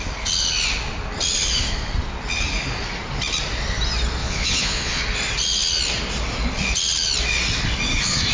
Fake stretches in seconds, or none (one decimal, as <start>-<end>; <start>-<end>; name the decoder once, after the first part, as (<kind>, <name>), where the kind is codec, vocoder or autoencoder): 4.2-5.0 (vocoder, Vocos)